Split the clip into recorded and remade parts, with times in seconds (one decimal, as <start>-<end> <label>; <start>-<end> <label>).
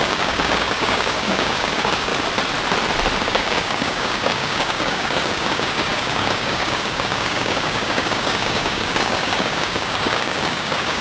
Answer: 0.0-2.1 remade; 2.1-3.2 recorded; 3.2-11.0 remade